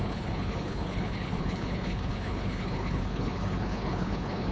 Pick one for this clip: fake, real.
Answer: fake